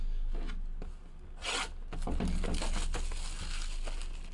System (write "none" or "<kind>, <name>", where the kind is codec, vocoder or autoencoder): none